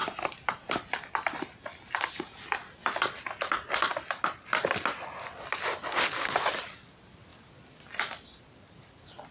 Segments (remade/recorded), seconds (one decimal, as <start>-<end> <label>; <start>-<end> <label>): 0.0-0.8 remade; 0.8-9.3 recorded